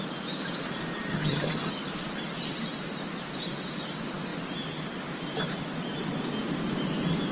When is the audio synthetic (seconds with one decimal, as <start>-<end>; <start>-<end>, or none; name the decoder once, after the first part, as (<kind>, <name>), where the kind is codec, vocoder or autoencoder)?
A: 1.1-1.7 (vocoder, HiFi-GAN)